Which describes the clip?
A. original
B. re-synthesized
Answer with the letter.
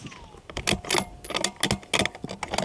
A